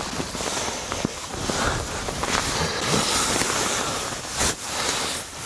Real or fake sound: real